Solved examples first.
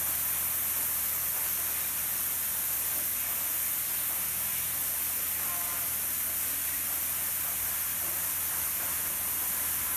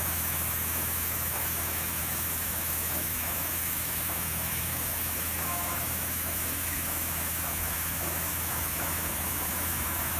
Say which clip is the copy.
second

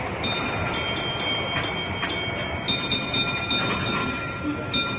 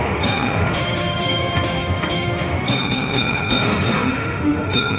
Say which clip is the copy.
second